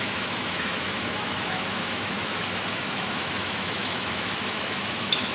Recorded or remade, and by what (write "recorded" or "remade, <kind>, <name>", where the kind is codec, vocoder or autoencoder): remade, autoencoder, DAC-VAE